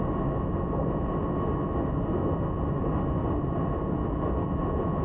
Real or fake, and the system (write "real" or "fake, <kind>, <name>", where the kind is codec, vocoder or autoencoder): real